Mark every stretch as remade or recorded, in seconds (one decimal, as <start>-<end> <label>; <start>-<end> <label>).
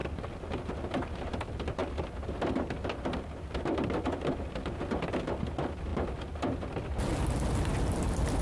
0.0-8.4 recorded